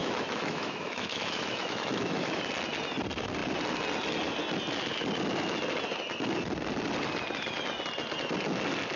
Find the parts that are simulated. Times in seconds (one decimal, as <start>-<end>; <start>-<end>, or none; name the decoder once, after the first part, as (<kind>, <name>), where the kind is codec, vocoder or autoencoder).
0.0-2.4 (autoencoder, DAC-VAE)